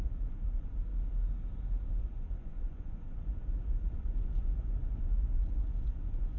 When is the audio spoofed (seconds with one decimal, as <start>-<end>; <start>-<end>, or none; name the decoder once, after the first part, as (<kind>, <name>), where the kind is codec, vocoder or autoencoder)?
0.0-0.9 (vocoder, Vocos); 2.0-6.4